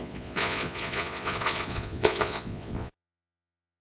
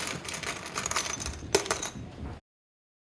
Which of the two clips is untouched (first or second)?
second